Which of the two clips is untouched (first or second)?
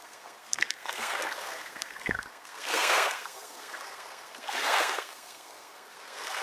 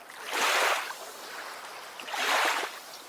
second